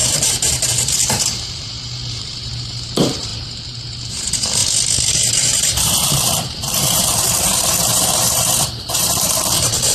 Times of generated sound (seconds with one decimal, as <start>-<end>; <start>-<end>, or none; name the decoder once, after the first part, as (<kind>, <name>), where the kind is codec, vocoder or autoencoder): 1.1-4.6 (vocoder, BigVGAN v2); 5.1-9.9